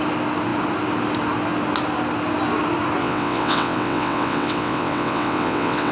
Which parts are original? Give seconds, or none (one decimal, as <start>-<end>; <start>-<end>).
0.0-3.0